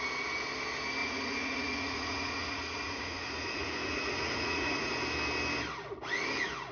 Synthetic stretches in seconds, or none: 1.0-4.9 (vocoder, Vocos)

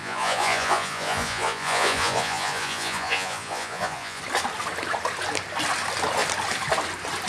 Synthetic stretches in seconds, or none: 0.0-4.2 (vocoder, Vocos)